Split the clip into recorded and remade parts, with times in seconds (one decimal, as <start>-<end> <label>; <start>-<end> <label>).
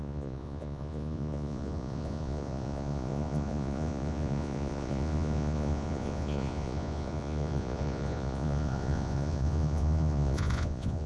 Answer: 0.0-11.1 remade